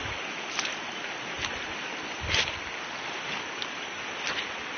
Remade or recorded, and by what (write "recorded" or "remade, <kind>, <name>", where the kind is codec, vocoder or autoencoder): recorded